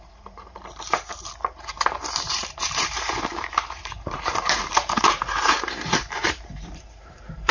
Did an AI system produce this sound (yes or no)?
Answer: yes